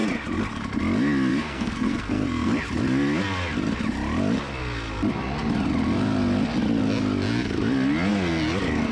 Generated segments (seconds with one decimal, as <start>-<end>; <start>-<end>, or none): 1.3-2.5